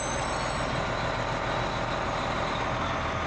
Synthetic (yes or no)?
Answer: no